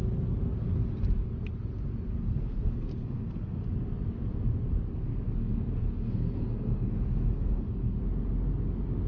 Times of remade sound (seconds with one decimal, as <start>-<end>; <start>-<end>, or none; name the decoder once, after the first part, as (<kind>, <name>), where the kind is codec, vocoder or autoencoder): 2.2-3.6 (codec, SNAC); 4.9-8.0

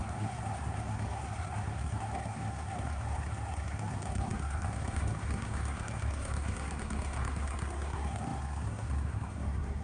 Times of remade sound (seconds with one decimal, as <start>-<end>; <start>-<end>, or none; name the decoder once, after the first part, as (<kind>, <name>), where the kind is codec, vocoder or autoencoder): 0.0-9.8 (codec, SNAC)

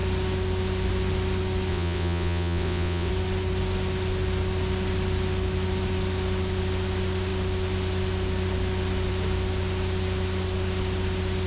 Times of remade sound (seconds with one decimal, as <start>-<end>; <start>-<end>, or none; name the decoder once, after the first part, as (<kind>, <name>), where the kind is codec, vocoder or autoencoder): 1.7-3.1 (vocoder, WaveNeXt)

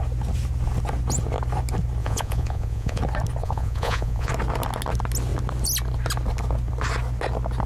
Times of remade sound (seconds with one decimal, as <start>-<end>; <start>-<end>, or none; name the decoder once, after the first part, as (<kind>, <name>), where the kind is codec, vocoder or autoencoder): 2.0-3.0 (vocoder, Vocos); 3.4-4.3

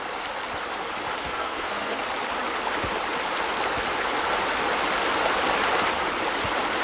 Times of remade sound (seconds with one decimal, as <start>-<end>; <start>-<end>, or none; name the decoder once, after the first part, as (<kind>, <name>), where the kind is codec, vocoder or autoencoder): 1.2-2.0 (codec, SNAC)

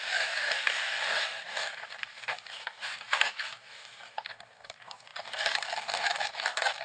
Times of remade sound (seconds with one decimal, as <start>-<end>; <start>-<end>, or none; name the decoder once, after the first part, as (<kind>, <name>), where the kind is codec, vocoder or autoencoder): 0.0-6.8 (codec, DAC)